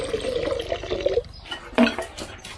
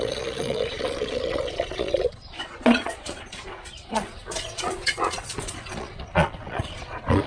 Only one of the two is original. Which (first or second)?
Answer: first